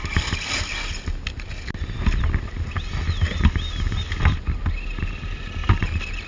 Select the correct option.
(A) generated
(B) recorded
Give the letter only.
B